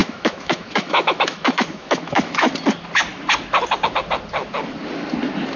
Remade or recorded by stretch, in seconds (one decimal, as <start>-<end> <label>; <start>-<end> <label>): 0.0-2.5 remade; 2.5-5.6 recorded

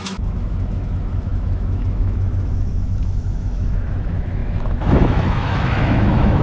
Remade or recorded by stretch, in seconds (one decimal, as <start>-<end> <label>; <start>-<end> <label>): 0.0-6.4 remade

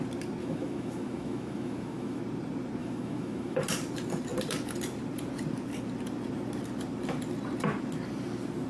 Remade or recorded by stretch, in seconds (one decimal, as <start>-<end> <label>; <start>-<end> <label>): 0.0-0.4 recorded; 0.4-2.2 remade; 2.2-2.8 recorded; 2.8-3.6 remade; 3.6-8.7 recorded

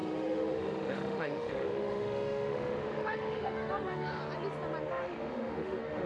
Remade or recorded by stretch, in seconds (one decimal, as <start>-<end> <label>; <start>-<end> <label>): 0.0-4.2 remade; 4.2-4.9 recorded; 4.9-6.1 remade

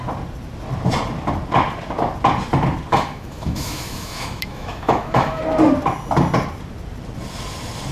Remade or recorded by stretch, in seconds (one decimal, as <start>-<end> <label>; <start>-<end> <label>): 0.0-2.9 recorded; 2.9-5.4 remade; 5.4-7.9 recorded

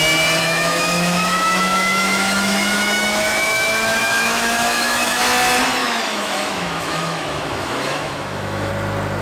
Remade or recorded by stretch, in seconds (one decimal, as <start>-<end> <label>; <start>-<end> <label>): 0.0-0.4 recorded; 0.4-5.2 remade; 5.2-5.8 recorded; 5.8-8.7 remade; 8.7-9.2 recorded